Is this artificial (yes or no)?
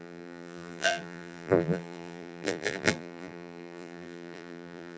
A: yes